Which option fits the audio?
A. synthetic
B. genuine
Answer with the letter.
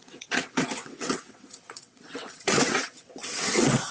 A